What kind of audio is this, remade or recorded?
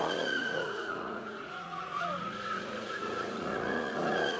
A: remade